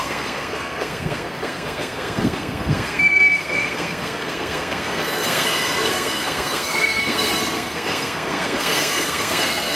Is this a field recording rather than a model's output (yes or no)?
no